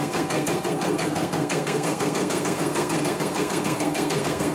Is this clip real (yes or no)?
no